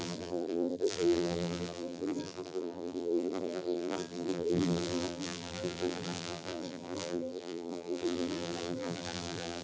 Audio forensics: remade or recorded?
remade